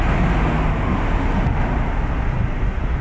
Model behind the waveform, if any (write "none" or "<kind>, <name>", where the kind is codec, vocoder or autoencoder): none